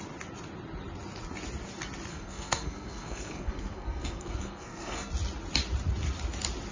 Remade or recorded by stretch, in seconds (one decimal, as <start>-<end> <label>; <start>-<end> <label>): 0.0-2.1 recorded; 2.1-5.1 remade; 5.1-6.7 recorded

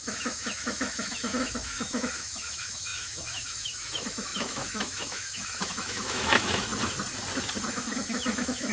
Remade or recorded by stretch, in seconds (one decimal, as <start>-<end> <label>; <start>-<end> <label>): 0.0-6.7 remade; 6.7-7.7 recorded; 7.7-8.7 remade

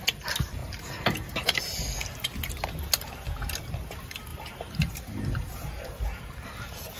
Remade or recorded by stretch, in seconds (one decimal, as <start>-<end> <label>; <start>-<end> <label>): 0.0-0.6 recorded; 0.6-1.6 remade; 1.6-4.3 recorded; 4.3-5.9 remade; 5.9-7.0 recorded